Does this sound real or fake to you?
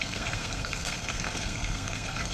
fake